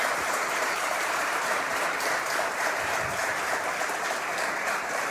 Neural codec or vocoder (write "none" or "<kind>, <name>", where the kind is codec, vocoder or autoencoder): vocoder, BigVGAN v2